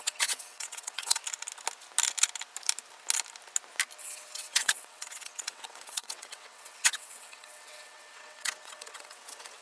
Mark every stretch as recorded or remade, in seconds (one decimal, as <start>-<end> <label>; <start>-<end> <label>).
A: 0.0-1.2 remade; 1.2-4.0 recorded; 4.0-9.6 remade